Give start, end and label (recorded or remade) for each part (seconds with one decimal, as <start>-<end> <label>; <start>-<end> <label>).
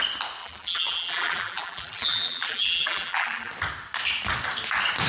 0.0-0.4 recorded; 0.4-3.5 remade; 3.5-5.1 recorded